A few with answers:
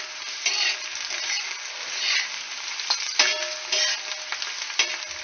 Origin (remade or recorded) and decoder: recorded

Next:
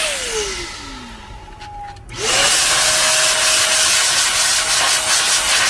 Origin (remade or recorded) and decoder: recorded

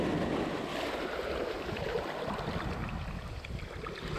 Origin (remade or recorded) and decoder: recorded